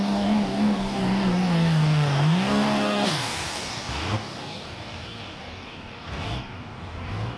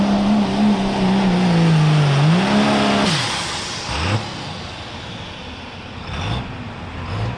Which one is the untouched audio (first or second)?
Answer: second